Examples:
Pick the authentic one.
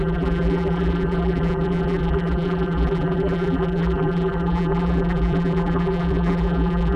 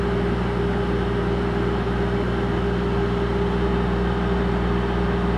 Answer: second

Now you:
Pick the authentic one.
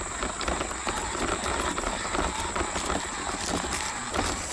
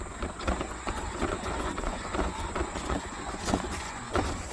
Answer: first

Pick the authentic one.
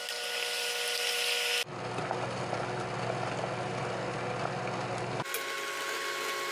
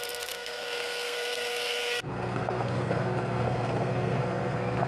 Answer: first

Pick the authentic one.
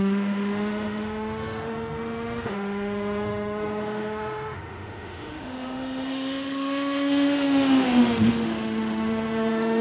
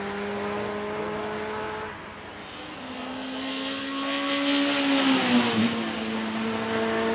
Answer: second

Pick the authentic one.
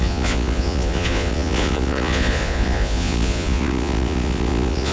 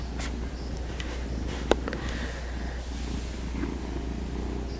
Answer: second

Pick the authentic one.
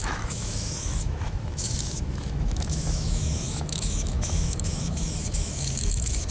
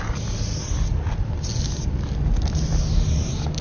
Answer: second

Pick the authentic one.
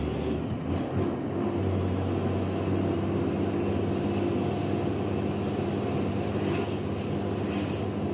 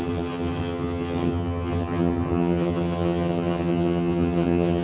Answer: first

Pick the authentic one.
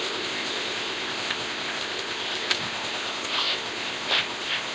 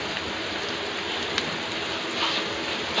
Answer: second